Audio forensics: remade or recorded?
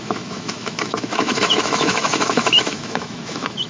remade